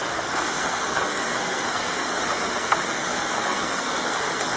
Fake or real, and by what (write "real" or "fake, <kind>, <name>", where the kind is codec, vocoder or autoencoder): fake, codec, SNAC